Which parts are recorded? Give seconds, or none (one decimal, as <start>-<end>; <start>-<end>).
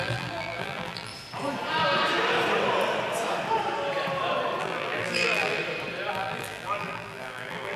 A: 1.1-4.6; 5.6-6.1